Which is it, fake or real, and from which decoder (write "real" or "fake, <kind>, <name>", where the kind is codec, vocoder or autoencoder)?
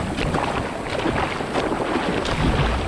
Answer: real